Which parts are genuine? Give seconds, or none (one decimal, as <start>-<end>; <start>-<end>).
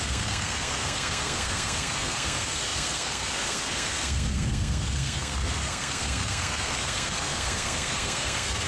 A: none